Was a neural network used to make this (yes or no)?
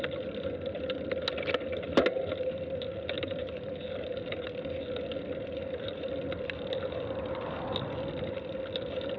no